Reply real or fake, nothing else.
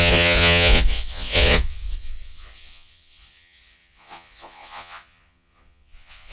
fake